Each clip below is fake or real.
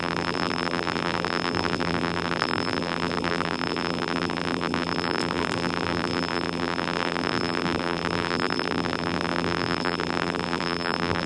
fake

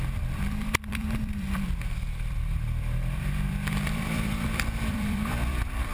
fake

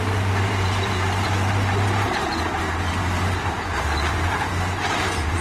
fake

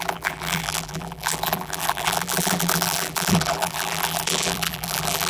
fake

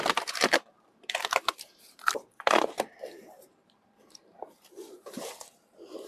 fake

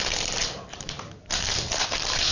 fake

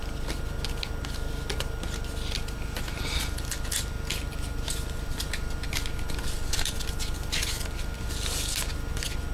real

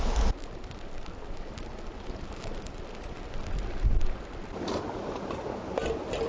real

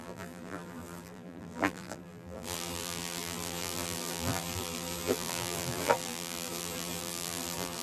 fake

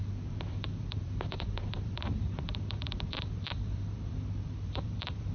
fake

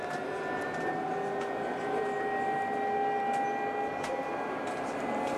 real